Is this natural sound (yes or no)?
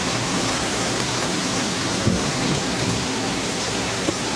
no